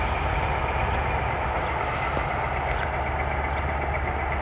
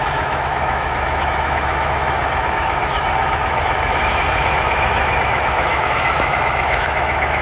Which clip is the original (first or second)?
first